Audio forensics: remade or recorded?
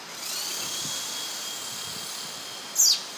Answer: recorded